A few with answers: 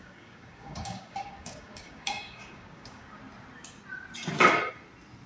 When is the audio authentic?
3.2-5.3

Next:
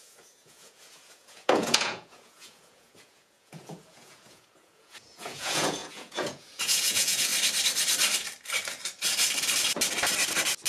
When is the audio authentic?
7.3-10.7

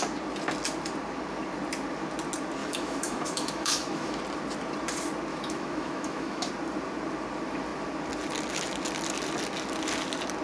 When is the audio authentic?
0.0-2.6; 4.2-5.3; 6.5-10.4